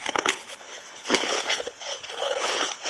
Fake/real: fake